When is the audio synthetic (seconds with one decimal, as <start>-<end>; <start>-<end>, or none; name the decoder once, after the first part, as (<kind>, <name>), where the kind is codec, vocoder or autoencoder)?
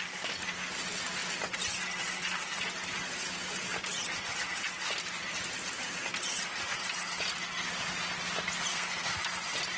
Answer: 8.7-9.2 (codec, SNAC)